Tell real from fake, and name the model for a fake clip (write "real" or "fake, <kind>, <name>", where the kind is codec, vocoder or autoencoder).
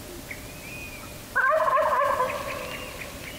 real